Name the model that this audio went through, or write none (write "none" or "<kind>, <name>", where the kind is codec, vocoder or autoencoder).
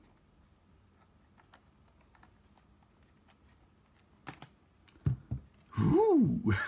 none